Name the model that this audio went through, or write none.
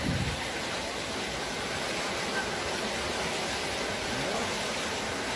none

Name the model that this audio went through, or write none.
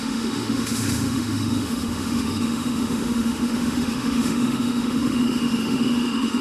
autoencoder, DAC-VAE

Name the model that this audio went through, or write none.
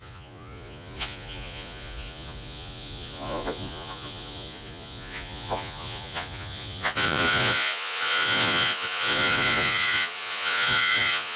vocoder, Vocos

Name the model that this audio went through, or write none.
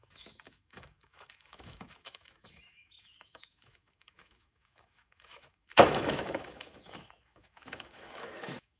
autoencoder, DAC-VAE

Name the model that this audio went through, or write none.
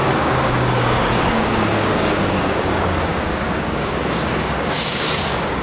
codec, DAC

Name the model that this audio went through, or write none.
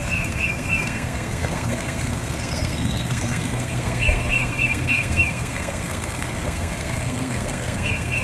codec, SNAC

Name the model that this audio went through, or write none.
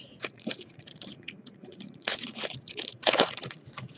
vocoder, Vocos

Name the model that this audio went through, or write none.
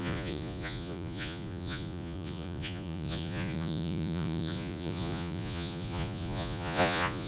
vocoder, Vocos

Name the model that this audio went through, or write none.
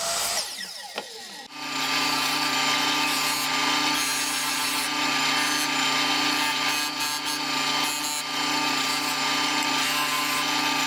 none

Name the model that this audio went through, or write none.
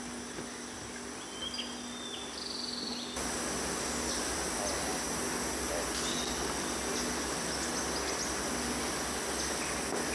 none